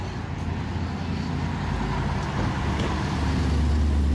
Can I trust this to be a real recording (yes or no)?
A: yes